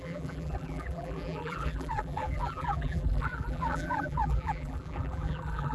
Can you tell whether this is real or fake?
fake